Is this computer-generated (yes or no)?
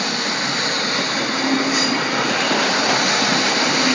no